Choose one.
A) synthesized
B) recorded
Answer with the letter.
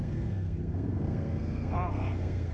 A